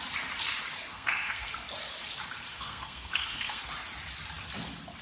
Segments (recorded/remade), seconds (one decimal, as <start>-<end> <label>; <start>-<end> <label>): 0.0-0.9 recorded; 0.9-1.5 remade; 1.5-2.5 recorded; 2.5-3.7 remade; 3.7-5.0 recorded